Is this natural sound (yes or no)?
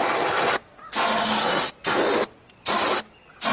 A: yes